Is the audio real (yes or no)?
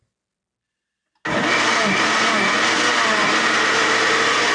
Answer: yes